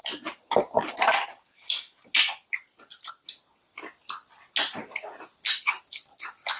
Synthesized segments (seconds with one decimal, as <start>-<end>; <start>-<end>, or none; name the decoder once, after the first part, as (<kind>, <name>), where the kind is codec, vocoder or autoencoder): none